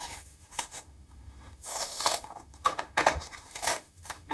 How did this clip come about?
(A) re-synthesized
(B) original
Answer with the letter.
A